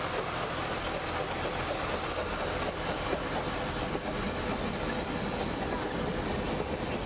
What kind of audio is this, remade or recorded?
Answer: recorded